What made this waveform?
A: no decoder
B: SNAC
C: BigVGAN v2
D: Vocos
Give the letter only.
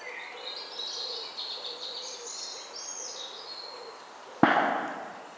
A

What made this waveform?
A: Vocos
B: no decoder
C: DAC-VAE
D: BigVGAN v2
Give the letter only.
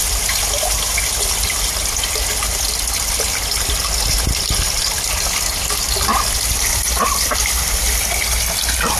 B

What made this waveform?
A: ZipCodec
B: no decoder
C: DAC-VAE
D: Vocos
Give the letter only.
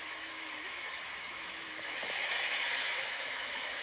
C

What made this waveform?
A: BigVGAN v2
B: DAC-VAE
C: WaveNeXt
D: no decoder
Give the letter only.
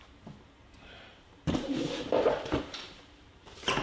A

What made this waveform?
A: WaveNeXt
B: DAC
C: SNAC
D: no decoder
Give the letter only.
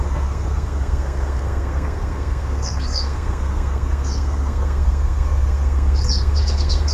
C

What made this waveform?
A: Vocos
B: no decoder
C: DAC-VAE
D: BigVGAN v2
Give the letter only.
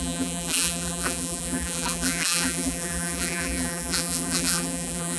D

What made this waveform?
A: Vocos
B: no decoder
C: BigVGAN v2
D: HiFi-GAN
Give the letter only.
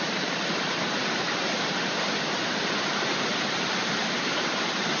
C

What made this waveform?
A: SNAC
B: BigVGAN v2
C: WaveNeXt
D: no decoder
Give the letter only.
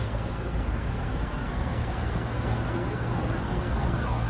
A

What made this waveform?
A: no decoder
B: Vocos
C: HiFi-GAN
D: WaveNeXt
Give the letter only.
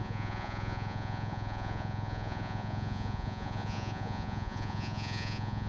B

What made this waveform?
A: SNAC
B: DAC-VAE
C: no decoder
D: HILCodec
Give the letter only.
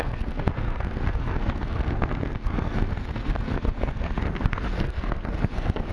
A